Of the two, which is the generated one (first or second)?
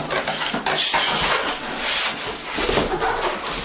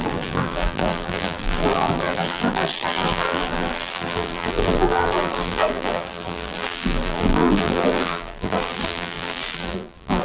second